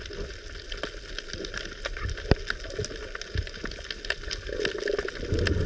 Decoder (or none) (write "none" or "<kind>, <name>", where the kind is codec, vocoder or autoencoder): none